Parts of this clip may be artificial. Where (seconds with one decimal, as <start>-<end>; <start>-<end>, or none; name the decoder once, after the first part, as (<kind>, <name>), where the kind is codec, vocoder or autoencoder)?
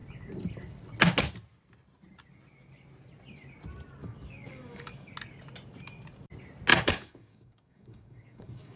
4.0-5.1 (codec, DAC); 6.7-8.8